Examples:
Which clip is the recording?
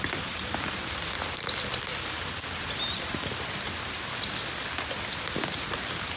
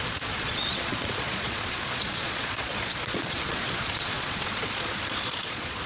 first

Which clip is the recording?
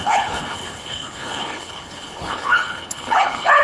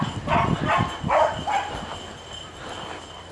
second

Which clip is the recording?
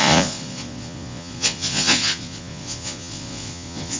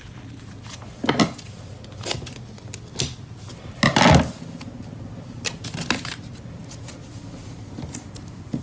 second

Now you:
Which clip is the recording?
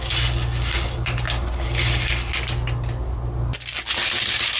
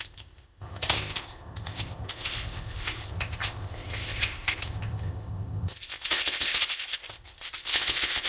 first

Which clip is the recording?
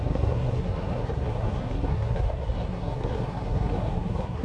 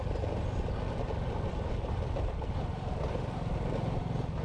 second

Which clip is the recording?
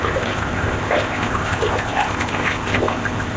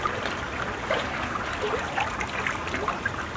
second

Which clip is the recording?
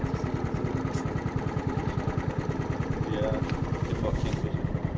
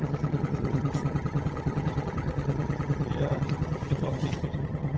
first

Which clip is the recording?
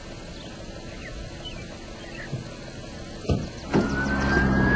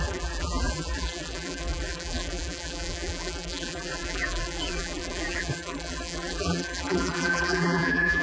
first